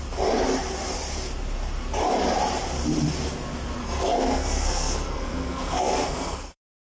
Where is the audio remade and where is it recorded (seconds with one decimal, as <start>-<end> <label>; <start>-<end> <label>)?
0.0-3.8 recorded; 3.8-6.8 remade